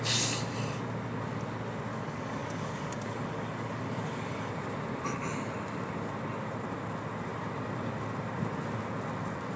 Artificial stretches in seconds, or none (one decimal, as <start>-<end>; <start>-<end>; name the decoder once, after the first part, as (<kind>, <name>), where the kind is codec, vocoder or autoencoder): 1.9-4.5 (codec, DAC)